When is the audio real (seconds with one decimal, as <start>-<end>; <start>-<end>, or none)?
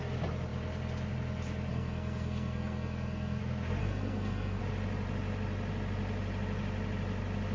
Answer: 0.0-1.7; 3.4-3.8; 4.6-7.5